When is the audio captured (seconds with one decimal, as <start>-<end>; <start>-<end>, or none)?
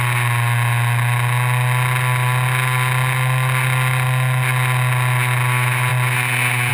0.0-6.7